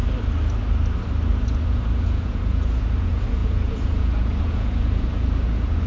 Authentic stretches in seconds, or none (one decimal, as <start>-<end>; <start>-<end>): 0.0-1.4